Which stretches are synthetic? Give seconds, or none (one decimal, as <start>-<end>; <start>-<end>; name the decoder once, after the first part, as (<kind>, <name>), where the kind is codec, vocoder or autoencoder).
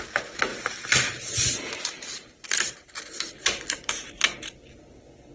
0.5-3.0 (vocoder, BigVGAN v2)